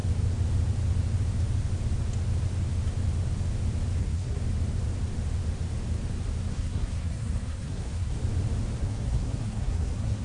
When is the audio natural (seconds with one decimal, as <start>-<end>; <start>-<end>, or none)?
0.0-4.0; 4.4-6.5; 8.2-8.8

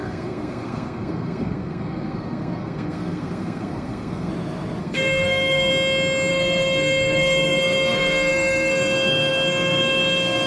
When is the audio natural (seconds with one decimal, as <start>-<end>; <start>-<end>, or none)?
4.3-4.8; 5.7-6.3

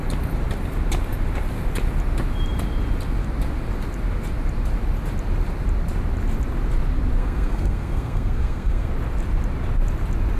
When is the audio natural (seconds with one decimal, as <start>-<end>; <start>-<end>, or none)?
0.0-7.2; 8.9-10.4

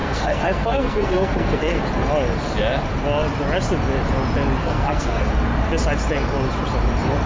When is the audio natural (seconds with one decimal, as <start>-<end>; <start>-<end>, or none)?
1.8-4.6; 5.3-7.3